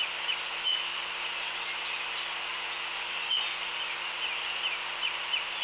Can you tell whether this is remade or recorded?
recorded